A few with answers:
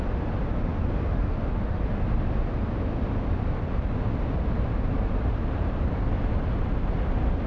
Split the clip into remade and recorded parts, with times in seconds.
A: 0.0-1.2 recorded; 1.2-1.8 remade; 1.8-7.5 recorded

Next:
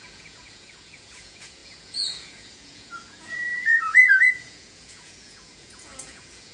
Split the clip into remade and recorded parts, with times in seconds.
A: 0.0-6.5 remade

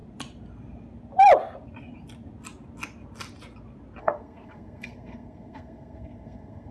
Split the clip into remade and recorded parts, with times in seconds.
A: 0.0-4.0 recorded; 4.0-6.7 remade

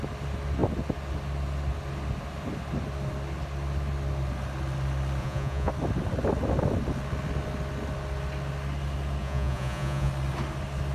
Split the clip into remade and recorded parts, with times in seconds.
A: 0.0-5.2 recorded; 5.2-5.7 remade; 5.7-9.2 recorded; 9.2-10.1 remade; 10.1-10.9 recorded

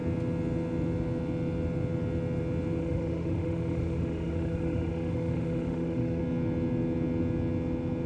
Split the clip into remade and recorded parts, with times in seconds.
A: 0.0-2.8 recorded; 2.8-6.2 remade; 6.2-8.1 recorded

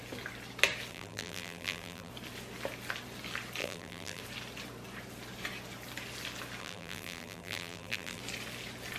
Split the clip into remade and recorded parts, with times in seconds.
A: 0.0-0.9 recorded; 0.9-2.1 remade; 2.1-3.6 recorded; 3.6-4.2 remade; 4.2-6.6 recorded; 6.6-8.2 remade; 8.2-9.0 recorded

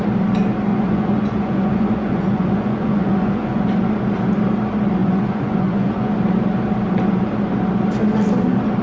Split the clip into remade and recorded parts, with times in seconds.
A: 0.0-0.7 recorded; 0.7-3.6 remade; 3.6-5.0 recorded; 5.0-6.1 remade; 6.1-8.8 recorded